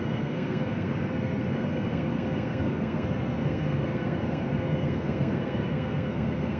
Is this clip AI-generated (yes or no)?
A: yes